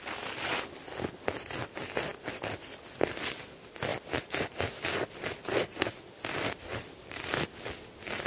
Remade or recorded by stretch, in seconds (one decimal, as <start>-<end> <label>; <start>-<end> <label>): 0.0-3.9 recorded; 3.9-7.4 remade; 7.4-8.3 recorded